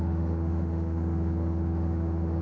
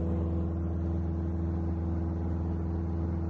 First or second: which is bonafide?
second